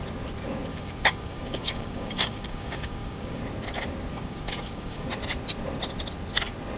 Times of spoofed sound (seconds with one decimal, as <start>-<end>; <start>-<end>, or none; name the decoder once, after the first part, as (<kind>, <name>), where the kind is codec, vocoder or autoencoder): 0.7-3.4 (codec, DAC); 4.1-5.1